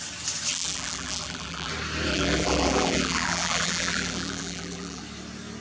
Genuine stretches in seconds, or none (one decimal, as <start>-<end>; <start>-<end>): 0.0-0.5; 1.7-2.1; 5.0-5.6